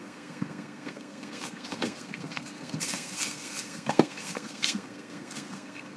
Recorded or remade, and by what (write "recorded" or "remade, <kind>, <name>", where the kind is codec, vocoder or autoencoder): remade, codec, SNAC